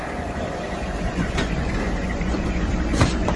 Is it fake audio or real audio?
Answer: fake